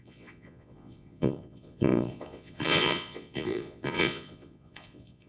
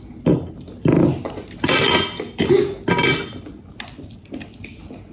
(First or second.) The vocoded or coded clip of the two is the first